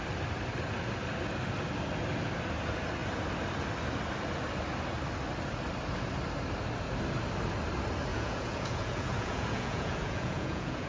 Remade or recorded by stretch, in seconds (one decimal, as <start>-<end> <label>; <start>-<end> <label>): 0.0-8.1 recorded; 8.1-10.9 remade